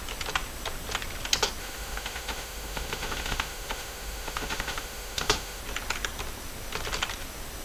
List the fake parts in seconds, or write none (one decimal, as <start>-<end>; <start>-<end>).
1.6-5.6